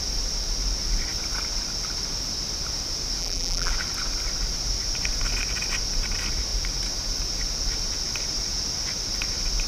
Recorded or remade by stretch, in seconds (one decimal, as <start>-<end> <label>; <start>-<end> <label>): 0.0-3.2 recorded; 3.2-3.7 remade; 3.7-9.7 recorded